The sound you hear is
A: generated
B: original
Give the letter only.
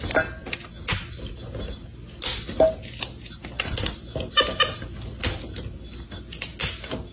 B